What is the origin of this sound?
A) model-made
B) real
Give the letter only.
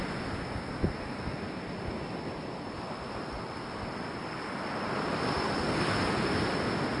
B